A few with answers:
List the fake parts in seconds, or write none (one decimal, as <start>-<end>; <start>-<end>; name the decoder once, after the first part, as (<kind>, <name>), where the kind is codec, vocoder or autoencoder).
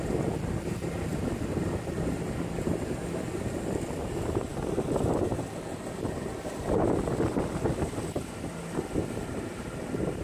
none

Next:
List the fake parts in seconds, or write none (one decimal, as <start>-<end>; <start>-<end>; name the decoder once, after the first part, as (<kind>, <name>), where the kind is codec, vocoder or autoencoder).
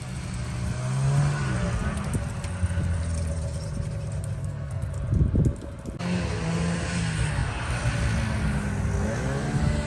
4.4-4.9 (codec, SNAC)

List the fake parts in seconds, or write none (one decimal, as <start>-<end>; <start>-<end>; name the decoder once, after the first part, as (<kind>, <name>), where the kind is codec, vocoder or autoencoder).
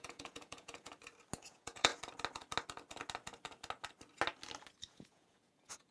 0.0-0.9 (vocoder, Vocos); 1.4-1.9; 4.9-5.9